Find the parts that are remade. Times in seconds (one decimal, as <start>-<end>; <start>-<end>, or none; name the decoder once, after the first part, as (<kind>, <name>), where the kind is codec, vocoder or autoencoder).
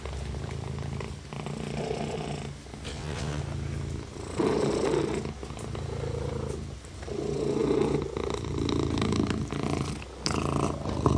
2.9-3.4 (vocoder, WaveNeXt)